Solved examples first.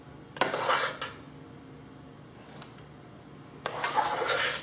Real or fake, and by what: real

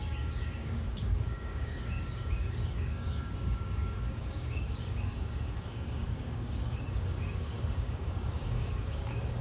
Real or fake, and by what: fake, codec, DAC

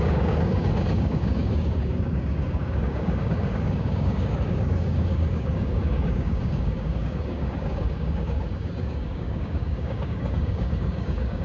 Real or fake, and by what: fake, codec, DAC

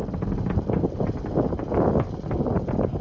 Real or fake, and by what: real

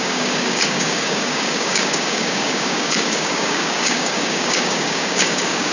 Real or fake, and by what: fake, codec, DAC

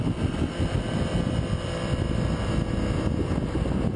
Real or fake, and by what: real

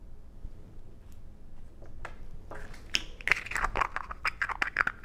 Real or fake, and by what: real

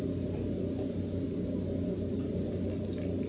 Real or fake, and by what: real